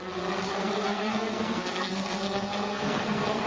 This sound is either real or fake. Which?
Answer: fake